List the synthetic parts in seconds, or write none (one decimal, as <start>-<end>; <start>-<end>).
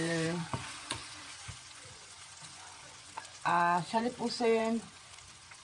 0.0-5.6